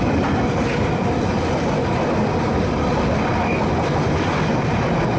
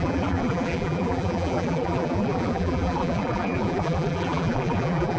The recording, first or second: first